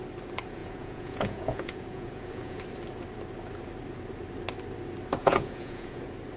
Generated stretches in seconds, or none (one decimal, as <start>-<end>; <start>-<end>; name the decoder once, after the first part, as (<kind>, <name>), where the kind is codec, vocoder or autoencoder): 0.6-2.6 (vocoder, Vocos); 5.2-6.0